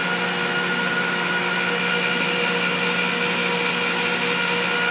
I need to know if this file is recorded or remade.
recorded